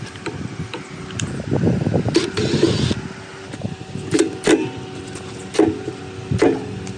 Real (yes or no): yes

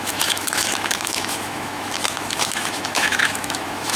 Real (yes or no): no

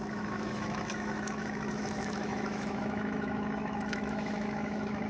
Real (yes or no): no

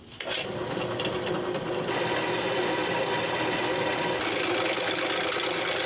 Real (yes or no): yes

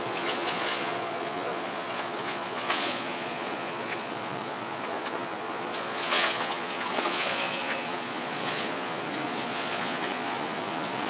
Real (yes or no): no